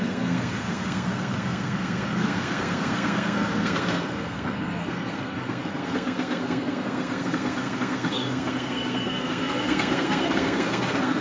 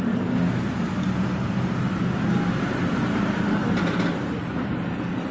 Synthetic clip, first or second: first